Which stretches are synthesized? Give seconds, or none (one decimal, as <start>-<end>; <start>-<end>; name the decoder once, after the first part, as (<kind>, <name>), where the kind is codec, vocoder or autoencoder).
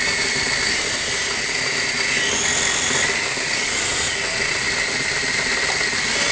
none